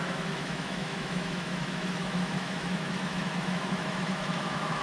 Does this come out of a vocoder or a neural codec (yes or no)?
yes